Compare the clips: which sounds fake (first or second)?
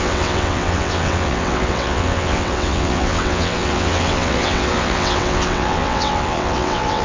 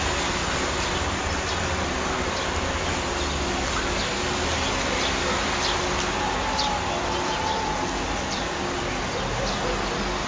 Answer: first